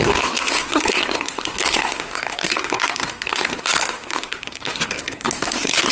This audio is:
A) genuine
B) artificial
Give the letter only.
B